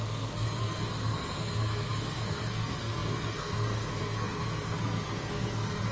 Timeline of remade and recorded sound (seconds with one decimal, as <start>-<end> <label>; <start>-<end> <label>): 0.0-5.9 remade